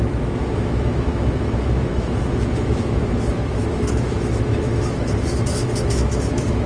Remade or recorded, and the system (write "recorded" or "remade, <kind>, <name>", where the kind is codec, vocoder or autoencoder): remade, autoencoder, DAC-VAE